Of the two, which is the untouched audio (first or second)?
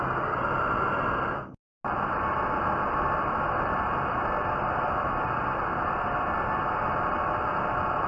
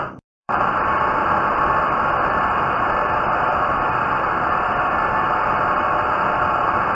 first